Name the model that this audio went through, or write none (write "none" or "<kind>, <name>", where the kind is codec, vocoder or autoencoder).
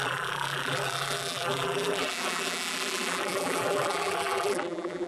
vocoder, BigVGAN v2